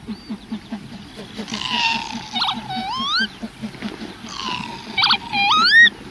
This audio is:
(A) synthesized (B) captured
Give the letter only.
B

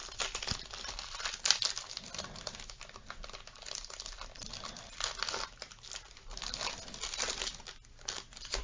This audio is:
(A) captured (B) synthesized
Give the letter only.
A